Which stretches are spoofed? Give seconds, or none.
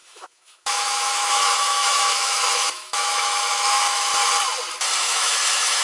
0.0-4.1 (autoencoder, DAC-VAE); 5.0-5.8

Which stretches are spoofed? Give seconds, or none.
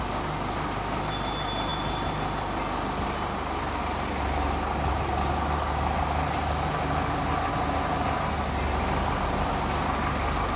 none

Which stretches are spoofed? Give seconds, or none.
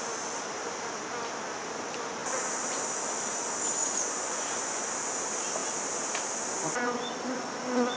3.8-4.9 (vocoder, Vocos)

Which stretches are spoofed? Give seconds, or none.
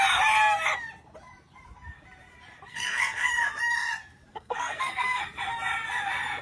2.7-3.3 (codec, SNAC); 4.3-5.2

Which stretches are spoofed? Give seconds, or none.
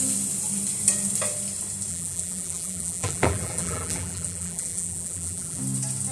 1.9-5.6 (vocoder, BigVGAN v2)